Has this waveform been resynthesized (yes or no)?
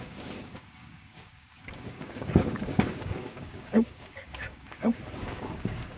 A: yes